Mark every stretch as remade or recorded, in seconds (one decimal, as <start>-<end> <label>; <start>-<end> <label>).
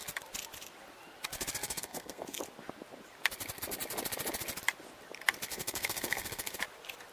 0.0-1.6 recorded; 1.6-2.4 remade; 2.4-5.5 recorded; 5.5-6.6 remade; 6.6-7.1 recorded